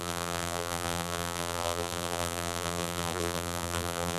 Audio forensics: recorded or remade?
remade